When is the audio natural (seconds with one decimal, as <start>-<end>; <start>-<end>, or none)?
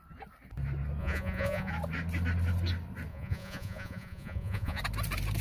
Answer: 0.0-1.0; 1.7-3.1; 4.8-5.4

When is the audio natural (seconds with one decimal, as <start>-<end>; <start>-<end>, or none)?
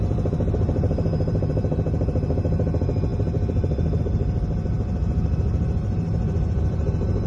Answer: none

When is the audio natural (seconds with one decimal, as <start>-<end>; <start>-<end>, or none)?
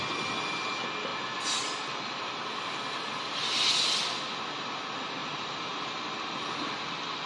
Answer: 0.0-5.2; 6.0-7.3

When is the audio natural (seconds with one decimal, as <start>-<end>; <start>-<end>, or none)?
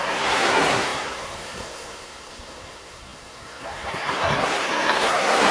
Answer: none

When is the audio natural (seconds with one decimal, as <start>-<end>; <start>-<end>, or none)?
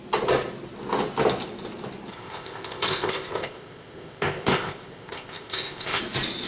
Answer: 0.0-2.1; 6.0-6.5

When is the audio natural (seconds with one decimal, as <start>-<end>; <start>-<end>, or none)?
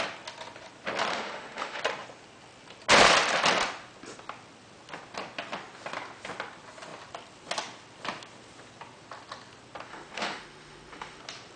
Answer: 0.0-1.1; 1.8-9.9; 11.2-11.6